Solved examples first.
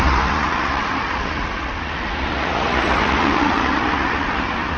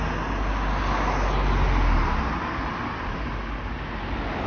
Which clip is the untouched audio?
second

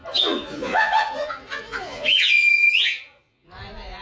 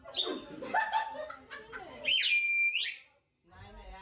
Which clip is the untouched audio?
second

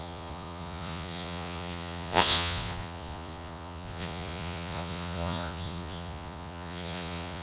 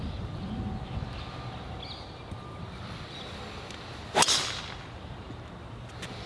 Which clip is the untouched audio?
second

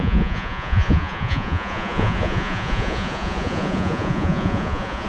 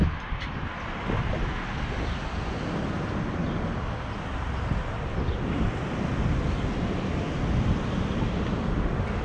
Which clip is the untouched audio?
second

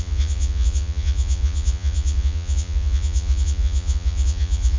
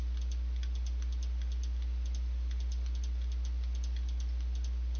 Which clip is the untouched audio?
second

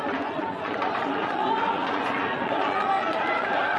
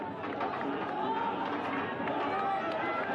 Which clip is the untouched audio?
second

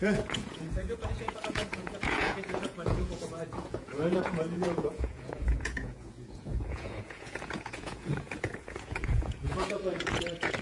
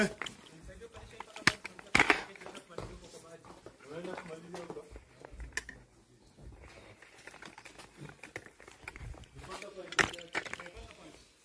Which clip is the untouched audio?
second